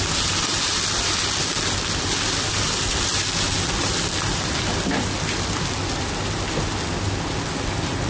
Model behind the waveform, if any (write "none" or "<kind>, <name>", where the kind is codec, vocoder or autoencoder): none